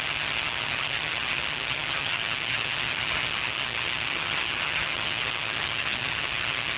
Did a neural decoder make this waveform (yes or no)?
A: yes